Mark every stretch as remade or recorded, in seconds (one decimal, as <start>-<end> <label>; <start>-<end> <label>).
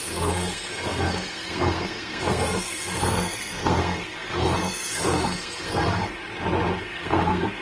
0.0-6.2 remade; 6.2-6.8 recorded; 6.8-7.6 remade